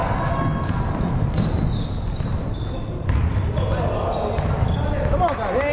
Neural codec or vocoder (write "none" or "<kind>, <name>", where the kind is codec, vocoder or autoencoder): none